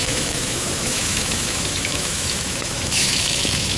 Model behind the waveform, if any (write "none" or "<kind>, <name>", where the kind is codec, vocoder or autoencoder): autoencoder, DAC-VAE